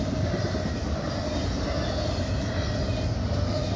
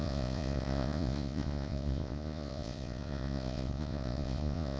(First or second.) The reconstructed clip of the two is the second